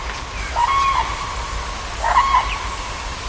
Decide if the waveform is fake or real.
real